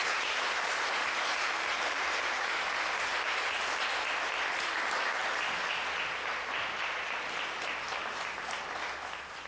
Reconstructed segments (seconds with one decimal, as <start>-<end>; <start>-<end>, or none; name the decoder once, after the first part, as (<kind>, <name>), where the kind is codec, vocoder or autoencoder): 0.0-2.6 (vocoder, BigVGAN v2); 3.1-3.8

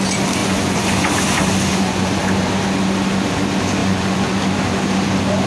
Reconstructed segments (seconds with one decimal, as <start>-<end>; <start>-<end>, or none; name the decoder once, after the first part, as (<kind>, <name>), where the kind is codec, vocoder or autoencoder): 0.4-1.1 (vocoder, Vocos); 1.7-2.2; 3.8-4.3

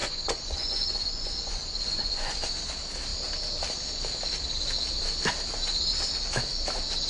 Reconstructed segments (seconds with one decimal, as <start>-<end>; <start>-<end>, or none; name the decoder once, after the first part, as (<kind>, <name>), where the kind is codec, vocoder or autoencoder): 0.0-2.5 (vocoder, Vocos)

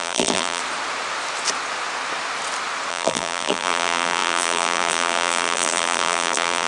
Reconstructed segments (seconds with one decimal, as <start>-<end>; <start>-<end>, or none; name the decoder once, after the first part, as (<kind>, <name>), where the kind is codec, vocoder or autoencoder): 0.0-0.6 (vocoder, BigVGAN v2); 2.9-6.7

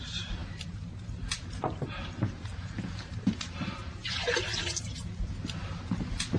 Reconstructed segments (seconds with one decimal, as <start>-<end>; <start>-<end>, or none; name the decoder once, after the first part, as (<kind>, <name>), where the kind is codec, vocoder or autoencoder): 0.0-6.4 (vocoder, BigVGAN v2)

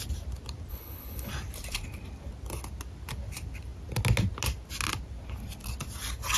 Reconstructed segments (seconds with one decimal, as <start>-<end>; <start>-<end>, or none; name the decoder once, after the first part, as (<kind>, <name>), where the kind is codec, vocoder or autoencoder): 0.7-1.3 (codec, HILCodec)

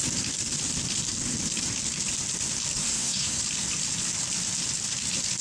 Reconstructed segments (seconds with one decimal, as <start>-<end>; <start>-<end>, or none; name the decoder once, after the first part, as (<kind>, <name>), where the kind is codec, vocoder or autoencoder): 2.8-3.4 (codec, SNAC)

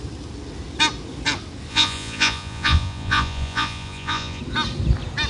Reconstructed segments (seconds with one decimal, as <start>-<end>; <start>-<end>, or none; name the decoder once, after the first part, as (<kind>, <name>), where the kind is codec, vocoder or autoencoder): 1.7-4.4 (vocoder, Vocos)